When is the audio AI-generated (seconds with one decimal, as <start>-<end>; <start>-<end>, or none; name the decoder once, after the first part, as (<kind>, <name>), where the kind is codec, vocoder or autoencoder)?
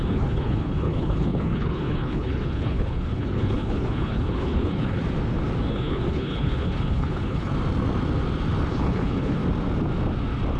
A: 0.0-5.0 (codec, HILCodec); 5.7-7.5; 8.7-9.4